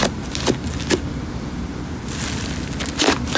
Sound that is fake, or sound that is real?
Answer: real